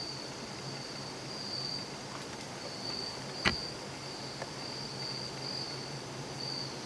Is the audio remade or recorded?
recorded